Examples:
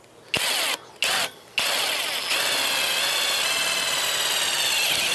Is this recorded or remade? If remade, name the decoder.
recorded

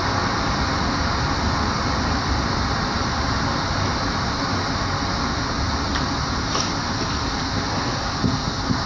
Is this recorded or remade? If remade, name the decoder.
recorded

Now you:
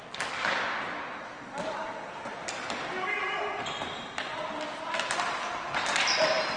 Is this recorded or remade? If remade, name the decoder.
recorded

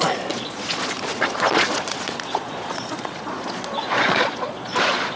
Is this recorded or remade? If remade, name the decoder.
remade, vocoder, Vocos